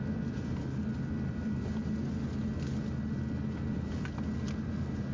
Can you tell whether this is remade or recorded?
recorded